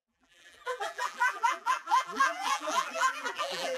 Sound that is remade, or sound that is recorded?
remade